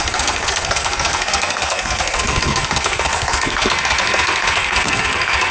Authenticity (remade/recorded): remade